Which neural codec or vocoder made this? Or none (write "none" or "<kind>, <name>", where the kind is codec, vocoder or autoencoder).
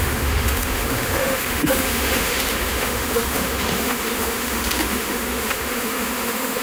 autoencoder, DAC-VAE